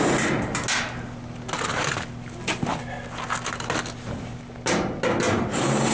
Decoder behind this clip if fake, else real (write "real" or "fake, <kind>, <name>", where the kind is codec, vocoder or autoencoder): real